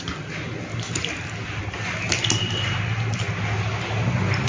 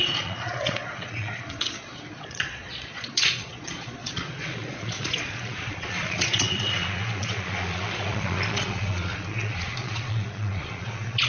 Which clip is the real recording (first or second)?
first